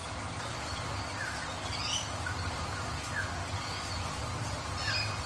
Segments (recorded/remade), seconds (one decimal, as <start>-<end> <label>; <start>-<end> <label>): 0.0-5.3 recorded